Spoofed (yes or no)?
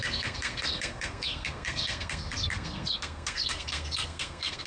yes